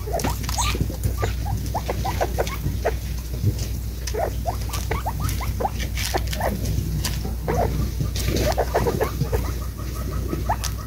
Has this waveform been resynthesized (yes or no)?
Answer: no